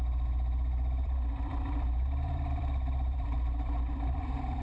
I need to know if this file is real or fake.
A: fake